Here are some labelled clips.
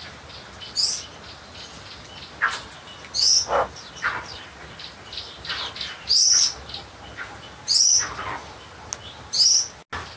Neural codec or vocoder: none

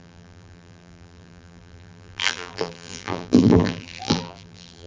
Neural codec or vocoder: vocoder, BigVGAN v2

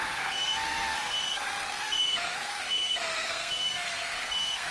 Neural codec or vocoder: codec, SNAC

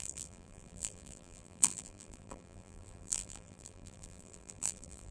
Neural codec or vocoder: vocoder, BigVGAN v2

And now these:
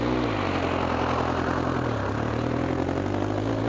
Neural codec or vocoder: none